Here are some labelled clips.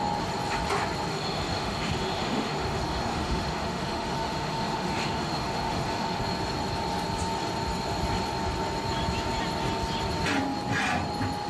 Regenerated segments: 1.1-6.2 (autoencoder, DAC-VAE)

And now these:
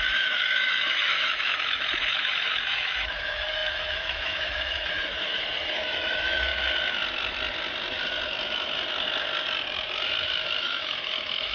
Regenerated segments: 0.0-6.5 (autoencoder, DAC-VAE); 10.6-11.5

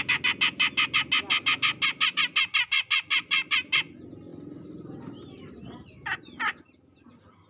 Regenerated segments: none

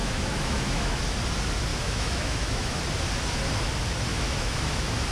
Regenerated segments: 0.0-1.0 (autoencoder, DAC-VAE); 1.7-2.8; 4.1-5.1

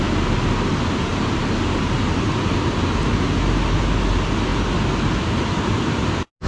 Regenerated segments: none

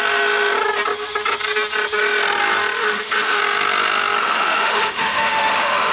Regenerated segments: 2.8-3.4 (autoencoder, DAC-VAE); 4.2-5.9